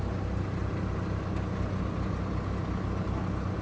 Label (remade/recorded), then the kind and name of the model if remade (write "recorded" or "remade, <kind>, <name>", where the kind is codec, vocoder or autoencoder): recorded